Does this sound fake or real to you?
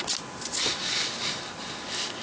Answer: real